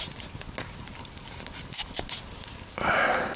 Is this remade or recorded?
recorded